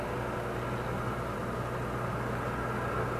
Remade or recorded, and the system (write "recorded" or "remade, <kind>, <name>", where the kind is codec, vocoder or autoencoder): recorded